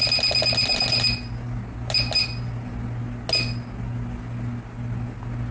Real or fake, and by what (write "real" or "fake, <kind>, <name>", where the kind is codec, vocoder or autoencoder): real